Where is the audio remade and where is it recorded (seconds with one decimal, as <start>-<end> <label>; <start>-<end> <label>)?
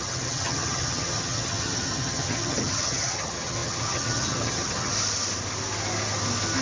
0.0-4.9 remade; 4.9-6.6 recorded